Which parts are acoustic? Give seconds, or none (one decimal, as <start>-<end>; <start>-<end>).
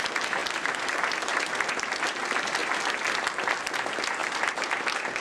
0.0-5.2